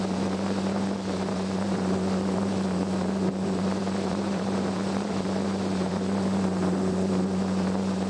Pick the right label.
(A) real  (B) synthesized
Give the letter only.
B